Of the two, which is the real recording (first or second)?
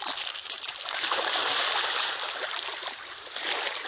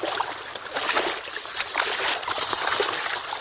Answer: second